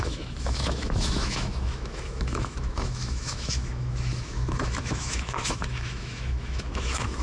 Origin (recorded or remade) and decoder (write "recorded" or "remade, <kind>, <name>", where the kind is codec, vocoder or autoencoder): remade, autoencoder, DAC-VAE